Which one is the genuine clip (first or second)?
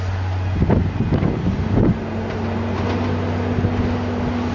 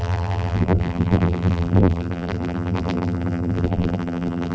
first